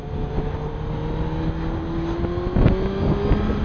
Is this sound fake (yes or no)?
no